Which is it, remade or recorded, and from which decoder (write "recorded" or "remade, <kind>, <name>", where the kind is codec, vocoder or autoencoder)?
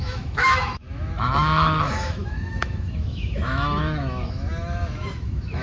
remade, autoencoder, DAC-VAE